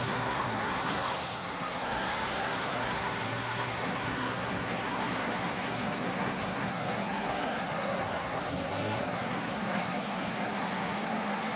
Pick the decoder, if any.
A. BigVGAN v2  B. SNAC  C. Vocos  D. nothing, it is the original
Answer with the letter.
B